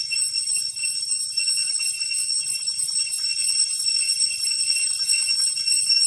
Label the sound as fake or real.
real